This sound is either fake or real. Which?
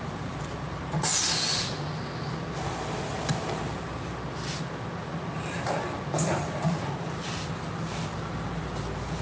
real